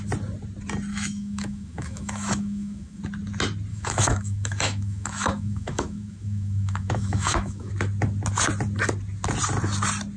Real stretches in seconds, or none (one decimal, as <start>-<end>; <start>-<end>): 0.0-0.9; 3.0-3.7; 7.7-10.2